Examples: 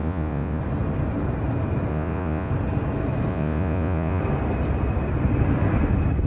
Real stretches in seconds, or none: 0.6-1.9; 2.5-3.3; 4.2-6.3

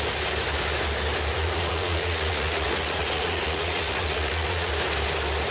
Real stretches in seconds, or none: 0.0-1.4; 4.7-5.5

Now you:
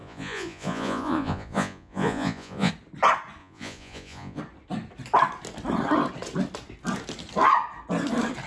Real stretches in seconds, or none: 2.7-3.4; 4.4-8.5

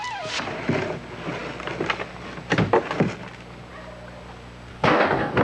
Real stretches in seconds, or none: 0.0-4.7

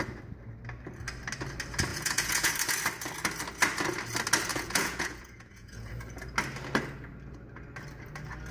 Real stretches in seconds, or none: 0.0-1.9; 2.5-4.5; 5.9-8.5

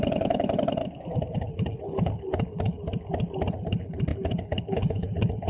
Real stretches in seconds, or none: 0.8-1.3; 2.8-3.5